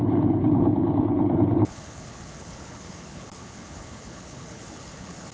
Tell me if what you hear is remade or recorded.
remade